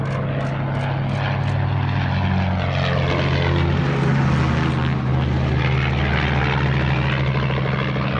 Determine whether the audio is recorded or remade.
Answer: recorded